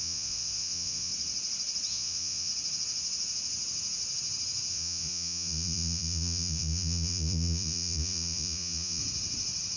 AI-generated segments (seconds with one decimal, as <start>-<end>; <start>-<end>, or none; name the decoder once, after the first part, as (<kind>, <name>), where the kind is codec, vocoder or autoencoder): 0.0-1.1 (vocoder, Vocos); 1.9-2.5; 4.7-9.0